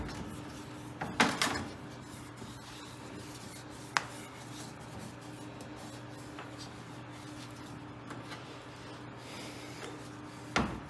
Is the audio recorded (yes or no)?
yes